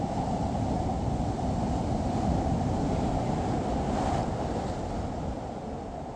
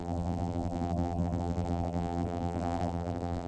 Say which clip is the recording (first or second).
first